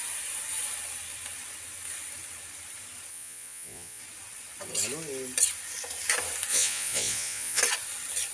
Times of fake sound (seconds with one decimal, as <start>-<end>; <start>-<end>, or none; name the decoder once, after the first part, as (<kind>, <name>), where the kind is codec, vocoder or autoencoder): 3.1-4.0 (vocoder, Vocos); 6.5-7.6